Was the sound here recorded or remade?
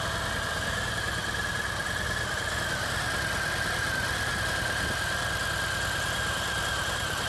remade